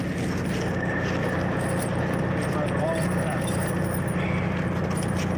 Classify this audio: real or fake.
real